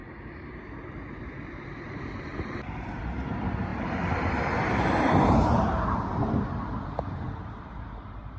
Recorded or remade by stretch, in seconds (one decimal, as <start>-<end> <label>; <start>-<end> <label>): 0.0-8.4 remade

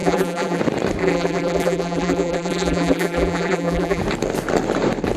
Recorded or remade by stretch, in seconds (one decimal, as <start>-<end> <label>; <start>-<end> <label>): 0.0-0.6 remade; 0.6-1.0 recorded; 1.0-4.0 remade; 4.0-5.2 recorded